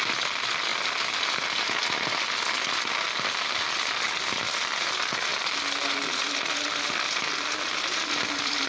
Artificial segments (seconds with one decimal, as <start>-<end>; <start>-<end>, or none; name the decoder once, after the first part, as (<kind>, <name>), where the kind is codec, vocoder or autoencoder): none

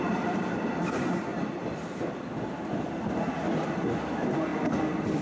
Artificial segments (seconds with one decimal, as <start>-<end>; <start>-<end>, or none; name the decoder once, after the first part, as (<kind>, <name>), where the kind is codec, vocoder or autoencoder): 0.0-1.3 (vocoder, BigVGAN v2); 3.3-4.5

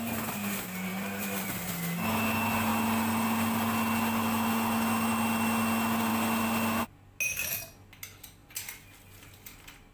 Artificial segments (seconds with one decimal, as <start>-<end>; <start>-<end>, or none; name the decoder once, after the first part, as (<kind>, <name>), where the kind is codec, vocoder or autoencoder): 0.9-1.7 (vocoder, BigVGAN v2)

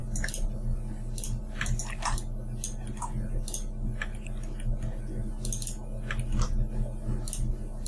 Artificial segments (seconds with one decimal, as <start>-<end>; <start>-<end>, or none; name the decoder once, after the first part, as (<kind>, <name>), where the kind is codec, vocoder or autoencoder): none

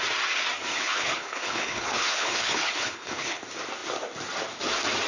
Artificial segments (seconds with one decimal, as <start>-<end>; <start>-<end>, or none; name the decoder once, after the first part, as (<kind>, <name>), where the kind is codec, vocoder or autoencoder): 0.7-3.4 (codec, HILCodec)

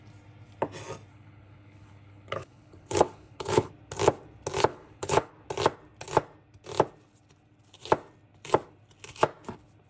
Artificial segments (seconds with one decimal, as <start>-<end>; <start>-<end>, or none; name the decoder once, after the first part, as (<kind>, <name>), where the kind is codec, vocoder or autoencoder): 1.1-3.7 (codec, HILCodec); 4.7-5.3

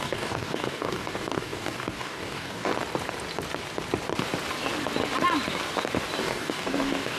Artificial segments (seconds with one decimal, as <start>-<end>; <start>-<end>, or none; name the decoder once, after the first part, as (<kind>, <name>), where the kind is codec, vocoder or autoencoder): 0.0-2.7 (codec, DAC); 6.2-7.2